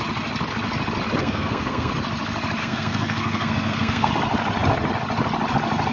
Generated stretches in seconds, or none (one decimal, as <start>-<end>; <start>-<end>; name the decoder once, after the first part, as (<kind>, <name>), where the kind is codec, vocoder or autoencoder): 1.2-1.9 (codec, SNAC); 2.6-4.1